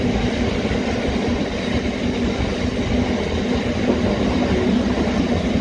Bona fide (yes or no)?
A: yes